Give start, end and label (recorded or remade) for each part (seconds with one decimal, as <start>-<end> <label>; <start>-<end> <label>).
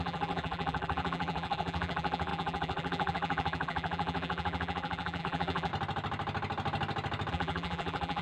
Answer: 0.0-5.7 remade; 5.7-7.3 recorded; 7.3-8.2 remade